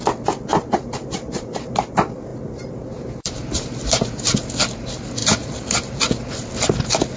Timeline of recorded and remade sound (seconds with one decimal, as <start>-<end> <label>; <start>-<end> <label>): 0.0-0.5 recorded; 0.5-1.9 remade; 1.9-2.3 recorded; 2.3-4.1 remade; 4.1-5.2 recorded; 5.2-6.0 remade; 6.0-7.2 recorded